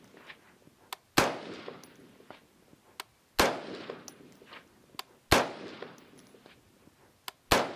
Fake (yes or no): no